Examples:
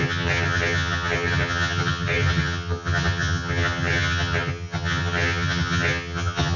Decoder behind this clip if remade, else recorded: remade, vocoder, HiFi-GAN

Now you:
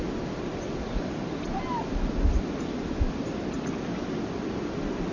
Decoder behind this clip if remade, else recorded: recorded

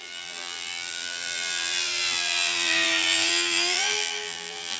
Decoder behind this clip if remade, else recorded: remade, vocoder, BigVGAN v2